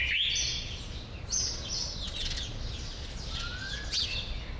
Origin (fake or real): real